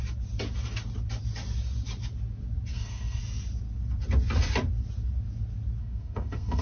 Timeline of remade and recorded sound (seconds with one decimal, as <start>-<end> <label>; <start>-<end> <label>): 0.0-2.7 recorded; 2.7-3.2 remade; 3.2-5.8 recorded; 5.8-6.6 remade

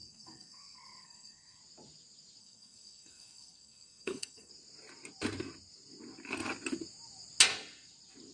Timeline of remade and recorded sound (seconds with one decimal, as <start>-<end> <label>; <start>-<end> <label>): 0.0-1.6 remade; 1.6-2.4 recorded; 2.4-4.5 remade; 4.5-8.3 recorded

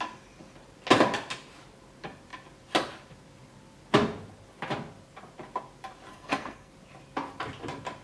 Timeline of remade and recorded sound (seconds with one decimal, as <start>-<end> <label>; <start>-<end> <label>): 0.0-6.1 recorded; 6.1-6.7 remade; 6.7-8.0 recorded

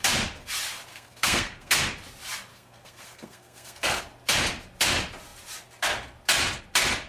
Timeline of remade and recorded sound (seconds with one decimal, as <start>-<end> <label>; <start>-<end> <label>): 0.0-0.9 recorded; 0.9-1.8 remade; 1.8-2.5 recorded; 2.5-4.0 remade; 4.0-7.1 recorded

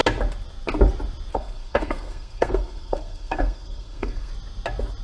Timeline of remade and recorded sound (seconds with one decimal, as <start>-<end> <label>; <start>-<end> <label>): 0.0-1.3 recorded; 1.3-4.3 remade; 4.3-5.0 recorded